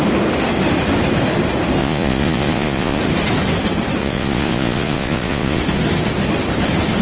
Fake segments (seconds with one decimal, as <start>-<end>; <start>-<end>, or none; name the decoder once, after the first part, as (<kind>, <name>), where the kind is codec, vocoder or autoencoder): 1.8-3.0 (vocoder, Vocos); 4.0-5.6